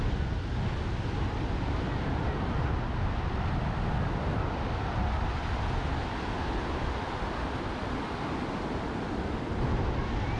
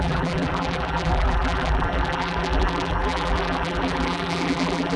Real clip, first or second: first